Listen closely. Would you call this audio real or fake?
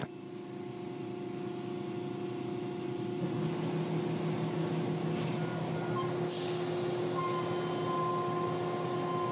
real